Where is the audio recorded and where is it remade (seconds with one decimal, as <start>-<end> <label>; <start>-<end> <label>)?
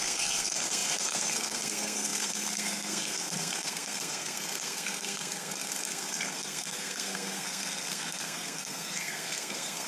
0.0-9.9 remade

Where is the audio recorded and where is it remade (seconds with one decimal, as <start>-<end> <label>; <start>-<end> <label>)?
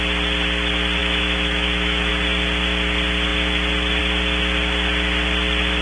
0.0-1.0 recorded; 1.0-2.1 remade; 2.1-5.8 recorded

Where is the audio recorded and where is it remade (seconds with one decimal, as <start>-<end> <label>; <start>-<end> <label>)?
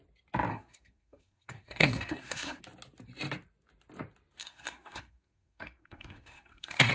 0.0-0.5 recorded; 0.5-2.6 remade; 2.6-4.4 recorded; 4.4-6.9 remade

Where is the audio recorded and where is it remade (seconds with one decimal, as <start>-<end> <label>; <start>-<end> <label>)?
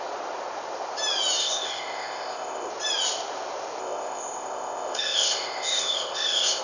0.0-1.4 recorded; 1.4-2.7 remade; 2.7-3.8 recorded; 3.8-6.6 remade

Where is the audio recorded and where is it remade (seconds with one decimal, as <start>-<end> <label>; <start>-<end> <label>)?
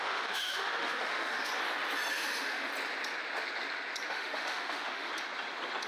0.0-1.5 remade; 1.5-2.1 recorded; 2.1-2.7 remade; 2.7-4.1 recorded; 4.1-5.1 remade; 5.1-5.9 recorded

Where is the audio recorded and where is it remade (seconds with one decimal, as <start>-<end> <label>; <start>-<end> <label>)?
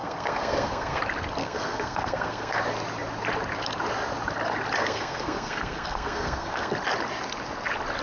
0.0-1.0 remade; 1.0-1.4 recorded; 1.4-2.6 remade; 2.6-4.8 recorded; 4.8-6.7 remade; 6.7-8.0 recorded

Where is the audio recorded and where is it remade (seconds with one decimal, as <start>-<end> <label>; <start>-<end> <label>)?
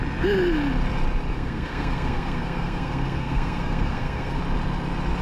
0.0-1.3 recorded; 1.3-4.4 remade; 4.4-5.2 recorded